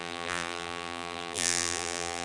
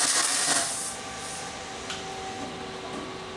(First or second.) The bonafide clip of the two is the second